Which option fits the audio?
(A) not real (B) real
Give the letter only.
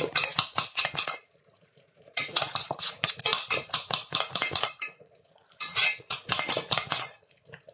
A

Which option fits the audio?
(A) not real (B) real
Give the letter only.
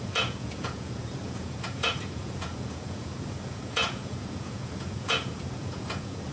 A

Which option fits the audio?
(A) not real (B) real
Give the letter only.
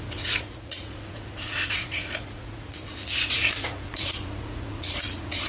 A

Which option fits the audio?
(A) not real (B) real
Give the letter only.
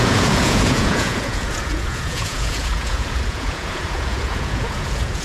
A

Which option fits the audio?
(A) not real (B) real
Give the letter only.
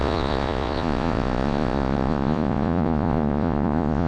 A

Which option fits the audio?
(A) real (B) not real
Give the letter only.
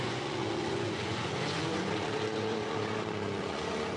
B